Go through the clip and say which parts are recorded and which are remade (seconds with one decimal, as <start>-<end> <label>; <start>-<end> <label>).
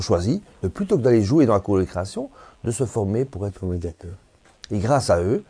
0.0-3.5 recorded; 3.5-4.4 remade; 4.4-5.5 recorded